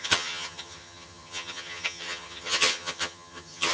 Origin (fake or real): fake